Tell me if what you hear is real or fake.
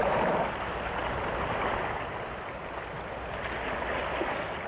real